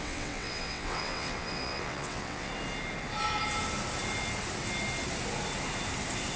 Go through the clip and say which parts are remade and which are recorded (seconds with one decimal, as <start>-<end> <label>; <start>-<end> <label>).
0.0-2.5 remade; 2.5-6.4 recorded